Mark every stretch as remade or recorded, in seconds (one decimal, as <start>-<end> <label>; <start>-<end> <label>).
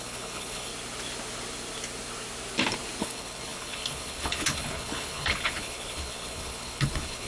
0.0-0.7 remade; 0.7-3.0 recorded; 3.0-7.3 remade